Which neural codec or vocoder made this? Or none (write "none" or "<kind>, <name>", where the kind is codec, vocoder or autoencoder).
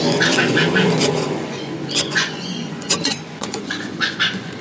vocoder, Vocos